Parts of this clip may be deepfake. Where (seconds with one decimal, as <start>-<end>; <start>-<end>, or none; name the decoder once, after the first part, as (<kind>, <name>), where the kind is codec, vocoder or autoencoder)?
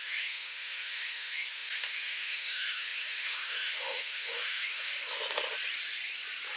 0.0-4.9 (autoencoder, DAC-VAE)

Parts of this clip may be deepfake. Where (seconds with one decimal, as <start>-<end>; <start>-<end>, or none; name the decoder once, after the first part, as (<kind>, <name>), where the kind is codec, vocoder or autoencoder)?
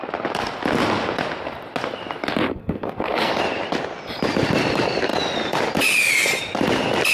2.5-3.3 (codec, SNAC)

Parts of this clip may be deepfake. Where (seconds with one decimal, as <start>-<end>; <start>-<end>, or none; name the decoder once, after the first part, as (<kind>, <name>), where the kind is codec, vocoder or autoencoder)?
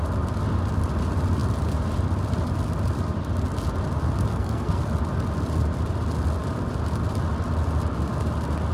4.3-4.8 (codec, SNAC)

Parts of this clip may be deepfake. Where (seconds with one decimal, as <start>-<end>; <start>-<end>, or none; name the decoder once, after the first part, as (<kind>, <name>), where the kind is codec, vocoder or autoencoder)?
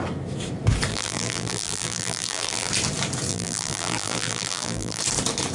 0.9-2.7 (vocoder, BigVGAN v2); 3.3-5.0